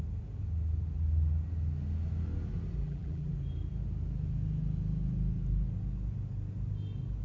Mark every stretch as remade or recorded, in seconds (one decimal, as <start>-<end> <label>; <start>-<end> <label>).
0.0-2.8 recorded; 2.8-3.3 remade; 3.3-7.2 recorded